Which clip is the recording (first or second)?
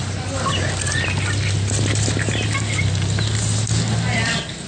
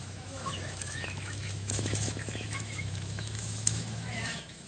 first